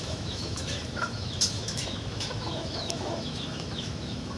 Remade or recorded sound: remade